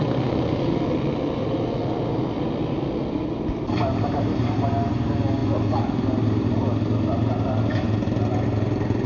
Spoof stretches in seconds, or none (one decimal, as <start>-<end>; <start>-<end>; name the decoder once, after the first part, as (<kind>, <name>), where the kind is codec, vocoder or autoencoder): none